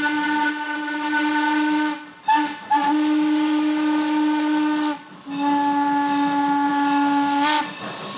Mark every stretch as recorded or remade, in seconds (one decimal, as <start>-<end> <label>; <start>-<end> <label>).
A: 0.0-8.2 recorded